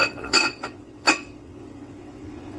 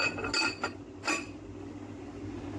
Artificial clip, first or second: first